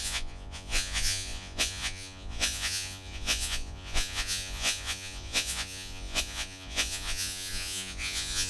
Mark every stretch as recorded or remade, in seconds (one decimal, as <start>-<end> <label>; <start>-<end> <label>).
0.0-8.5 remade